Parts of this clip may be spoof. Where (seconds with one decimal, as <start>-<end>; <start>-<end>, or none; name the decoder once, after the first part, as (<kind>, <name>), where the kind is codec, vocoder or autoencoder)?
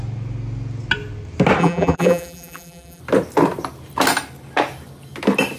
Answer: 1.6-3.0 (vocoder, BigVGAN v2)